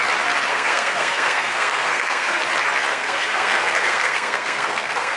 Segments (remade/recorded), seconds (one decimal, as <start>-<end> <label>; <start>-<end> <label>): 0.0-0.5 recorded; 0.5-2.4 remade; 2.4-2.9 recorded; 2.9-5.2 remade